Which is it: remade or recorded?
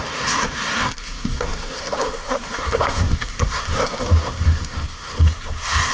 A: remade